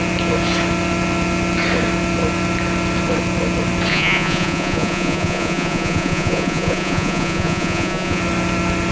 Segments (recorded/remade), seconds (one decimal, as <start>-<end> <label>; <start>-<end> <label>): 0.0-3.9 recorded; 3.9-8.2 remade; 8.2-8.9 recorded

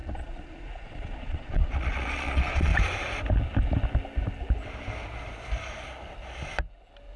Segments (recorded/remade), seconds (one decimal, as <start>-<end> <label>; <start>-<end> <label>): 0.0-2.7 remade; 2.7-7.2 recorded

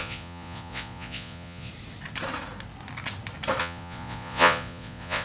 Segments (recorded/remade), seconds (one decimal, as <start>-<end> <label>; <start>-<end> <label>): 0.0-1.7 remade; 1.7-3.6 recorded; 3.6-5.2 remade

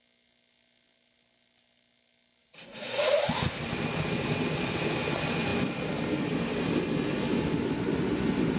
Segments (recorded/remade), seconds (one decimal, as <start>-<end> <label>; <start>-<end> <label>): 0.0-2.4 recorded; 2.4-3.3 remade; 3.3-8.6 recorded